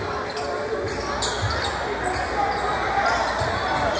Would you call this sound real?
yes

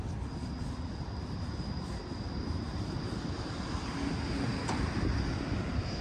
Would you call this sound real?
yes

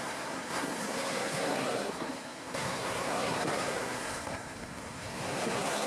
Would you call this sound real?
no